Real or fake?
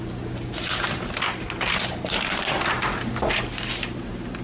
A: real